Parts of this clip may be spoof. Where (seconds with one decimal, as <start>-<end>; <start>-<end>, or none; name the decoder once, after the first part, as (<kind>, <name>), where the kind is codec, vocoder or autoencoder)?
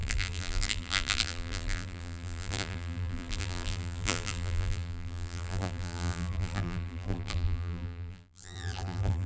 0.0-9.3 (vocoder, BigVGAN v2)